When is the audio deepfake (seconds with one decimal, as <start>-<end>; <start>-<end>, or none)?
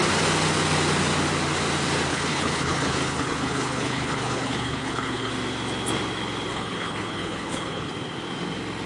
2.1-5.3; 6.5-7.9